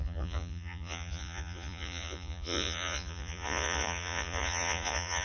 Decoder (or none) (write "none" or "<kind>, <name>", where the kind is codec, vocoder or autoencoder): vocoder, Vocos